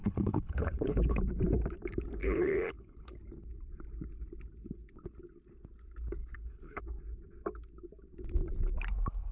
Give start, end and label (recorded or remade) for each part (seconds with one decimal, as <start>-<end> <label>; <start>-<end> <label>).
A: 0.0-1.2 remade; 1.2-2.2 recorded; 2.2-3.2 remade; 3.2-6.2 recorded; 6.2-6.8 remade; 6.8-9.3 recorded